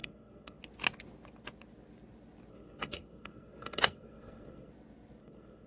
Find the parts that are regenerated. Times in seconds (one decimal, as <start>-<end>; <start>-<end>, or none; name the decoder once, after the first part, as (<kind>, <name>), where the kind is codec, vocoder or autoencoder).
0.0-0.6 (codec, SNAC); 2.5-4.7; 5.2-5.7